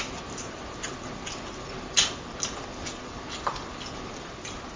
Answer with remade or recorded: recorded